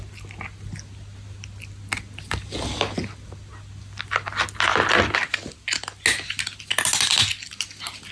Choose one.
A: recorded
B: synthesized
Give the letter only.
A